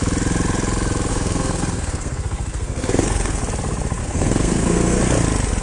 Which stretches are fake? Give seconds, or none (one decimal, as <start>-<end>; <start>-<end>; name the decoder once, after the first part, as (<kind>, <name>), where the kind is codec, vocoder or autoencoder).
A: 1.1-3.4 (codec, SNAC); 4.0-5.0